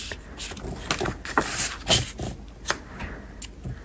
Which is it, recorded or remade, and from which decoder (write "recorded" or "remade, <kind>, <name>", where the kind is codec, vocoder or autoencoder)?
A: recorded